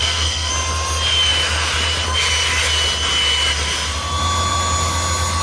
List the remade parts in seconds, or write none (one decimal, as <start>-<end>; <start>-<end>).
0.0-0.5